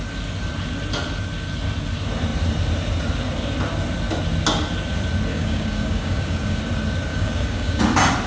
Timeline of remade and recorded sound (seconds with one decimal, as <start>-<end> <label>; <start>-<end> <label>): 0.0-5.3 recorded; 5.3-6.6 remade; 6.6-7.1 recorded; 7.1-7.8 remade; 7.8-8.3 recorded